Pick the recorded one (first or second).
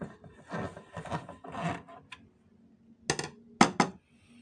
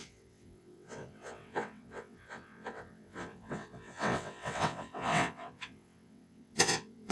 first